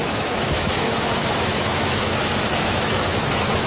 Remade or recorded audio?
remade